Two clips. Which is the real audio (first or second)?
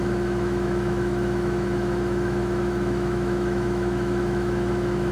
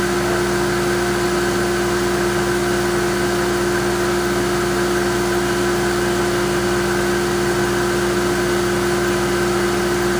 second